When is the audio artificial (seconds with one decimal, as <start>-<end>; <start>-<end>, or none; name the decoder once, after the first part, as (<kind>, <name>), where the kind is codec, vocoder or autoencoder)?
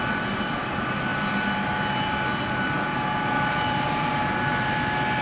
none